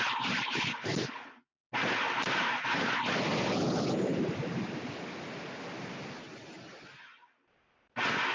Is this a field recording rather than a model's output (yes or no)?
yes